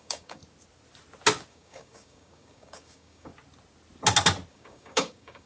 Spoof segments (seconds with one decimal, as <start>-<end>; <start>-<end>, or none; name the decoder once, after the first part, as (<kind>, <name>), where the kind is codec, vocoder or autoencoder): 0.0-0.4 (codec, DAC); 1.5-3.3; 4.5-5.5